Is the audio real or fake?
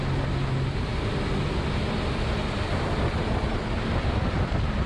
real